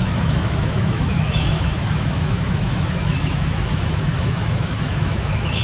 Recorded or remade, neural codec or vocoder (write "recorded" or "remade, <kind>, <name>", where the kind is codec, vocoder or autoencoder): remade, autoencoder, DAC-VAE